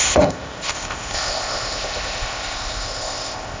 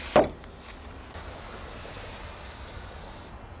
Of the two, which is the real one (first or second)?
second